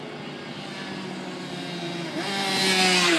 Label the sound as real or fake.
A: real